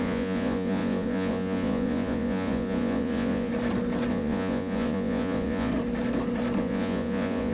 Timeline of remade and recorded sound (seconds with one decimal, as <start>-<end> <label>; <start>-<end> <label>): 0.0-3.5 remade; 3.5-4.1 recorded; 4.1-5.7 remade; 5.7-6.6 recorded; 6.6-7.5 remade